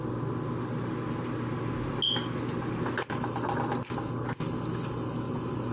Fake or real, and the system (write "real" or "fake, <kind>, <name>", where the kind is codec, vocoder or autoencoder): real